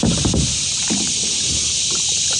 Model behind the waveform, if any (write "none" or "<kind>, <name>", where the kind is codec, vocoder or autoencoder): none